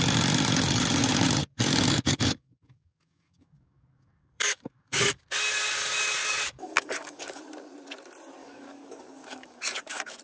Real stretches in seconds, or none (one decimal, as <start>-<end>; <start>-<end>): 0.0-1.4; 5.2-6.2; 7.4-8.4